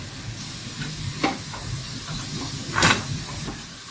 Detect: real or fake real